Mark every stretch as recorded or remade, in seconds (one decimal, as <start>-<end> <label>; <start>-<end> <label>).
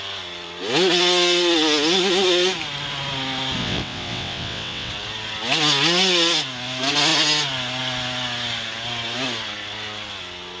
0.0-3.6 recorded; 3.6-4.9 remade; 4.9-10.6 recorded